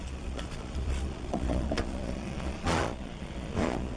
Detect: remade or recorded remade